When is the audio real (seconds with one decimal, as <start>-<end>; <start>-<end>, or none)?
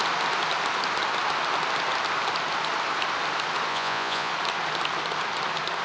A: 0.0-3.7; 4.3-5.8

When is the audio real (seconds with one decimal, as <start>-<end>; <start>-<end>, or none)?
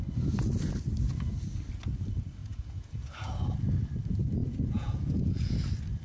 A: 0.0-2.4; 3.1-4.4; 5.5-6.0